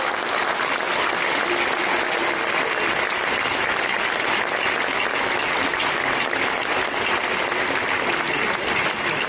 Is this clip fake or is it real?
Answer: real